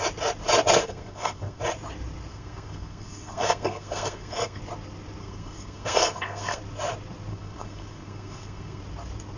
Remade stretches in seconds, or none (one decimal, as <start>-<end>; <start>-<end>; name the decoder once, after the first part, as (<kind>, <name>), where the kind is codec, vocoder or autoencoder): 0.8-1.6 (codec, SNAC); 2.3-4.6; 5.2-6.6; 7.3-8.8